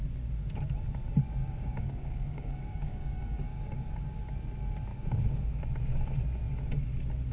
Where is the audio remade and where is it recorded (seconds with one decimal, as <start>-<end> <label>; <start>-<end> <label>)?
0.0-1.4 recorded; 1.4-4.2 remade; 4.2-4.9 recorded; 4.9-5.6 remade; 5.6-7.3 recorded